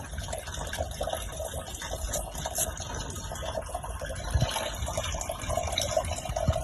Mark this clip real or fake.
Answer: real